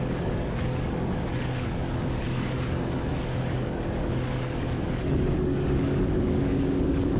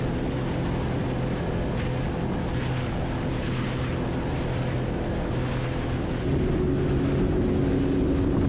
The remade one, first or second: first